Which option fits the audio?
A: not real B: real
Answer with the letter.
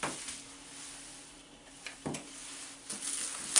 B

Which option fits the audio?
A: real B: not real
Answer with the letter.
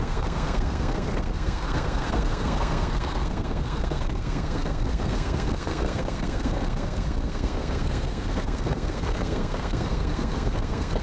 B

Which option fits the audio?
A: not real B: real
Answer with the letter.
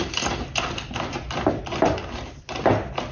B